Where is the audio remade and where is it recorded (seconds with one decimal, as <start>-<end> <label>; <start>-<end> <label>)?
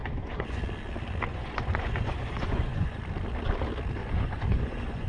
0.0-0.6 remade; 0.6-1.3 recorded; 1.3-3.0 remade; 3.0-4.0 recorded; 4.0-5.1 remade